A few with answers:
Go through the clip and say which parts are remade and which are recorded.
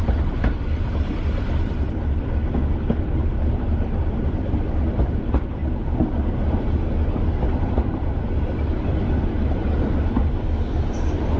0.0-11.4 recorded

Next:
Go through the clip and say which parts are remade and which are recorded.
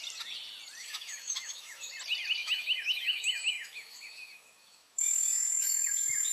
0.0-0.8 recorded; 0.8-1.9 remade; 1.9-2.4 recorded; 2.4-6.3 remade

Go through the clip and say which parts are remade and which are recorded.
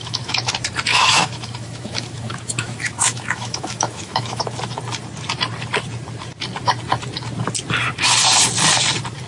0.0-0.5 remade; 0.5-0.9 recorded; 0.9-4.4 remade; 4.4-9.3 recorded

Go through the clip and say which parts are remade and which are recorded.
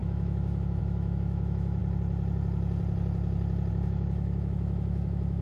0.0-1.8 remade; 1.8-3.7 recorded; 3.7-5.4 remade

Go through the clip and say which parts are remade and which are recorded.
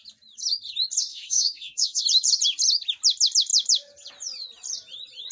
0.0-1.1 recorded; 1.1-2.0 remade; 2.0-5.3 recorded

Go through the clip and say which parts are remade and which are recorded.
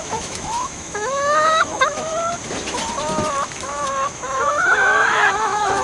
0.0-2.1 remade; 2.1-3.5 recorded; 3.5-5.8 remade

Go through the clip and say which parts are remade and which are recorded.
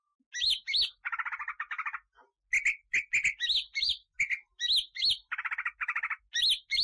0.0-6.8 recorded